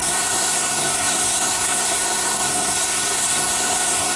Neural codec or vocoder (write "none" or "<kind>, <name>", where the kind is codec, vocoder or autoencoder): codec, SNAC